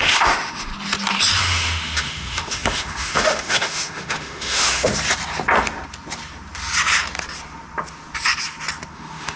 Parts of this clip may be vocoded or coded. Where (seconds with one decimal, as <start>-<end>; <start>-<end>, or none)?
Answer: 0.0-0.7; 1.4-4.9; 8.9-9.4